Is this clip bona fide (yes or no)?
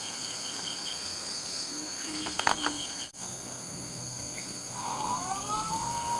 no